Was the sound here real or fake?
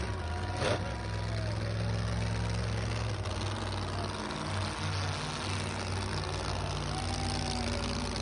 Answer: real